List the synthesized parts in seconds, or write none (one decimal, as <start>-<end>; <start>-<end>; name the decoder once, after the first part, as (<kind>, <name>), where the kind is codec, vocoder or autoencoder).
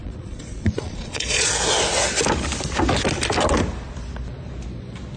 0.0-1.5 (vocoder, Vocos)